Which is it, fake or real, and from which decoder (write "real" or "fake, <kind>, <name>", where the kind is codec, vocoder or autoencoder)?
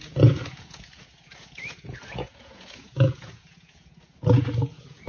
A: fake, vocoder, Vocos